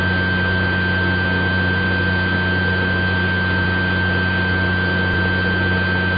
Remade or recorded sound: recorded